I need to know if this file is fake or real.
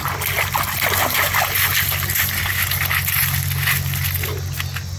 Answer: real